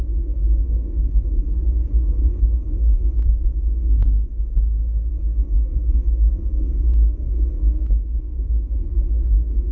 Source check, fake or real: fake